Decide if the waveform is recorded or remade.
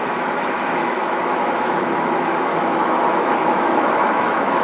remade